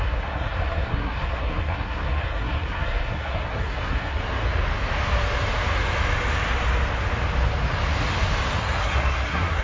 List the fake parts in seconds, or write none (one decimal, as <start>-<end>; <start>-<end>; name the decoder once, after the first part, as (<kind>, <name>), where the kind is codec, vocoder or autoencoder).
0.0-4.2 (codec, SNAC); 8.6-9.6